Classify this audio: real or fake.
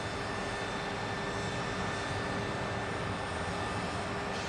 real